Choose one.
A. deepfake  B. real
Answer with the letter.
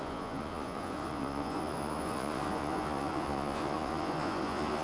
A